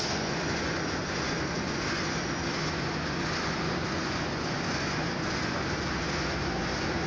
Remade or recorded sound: remade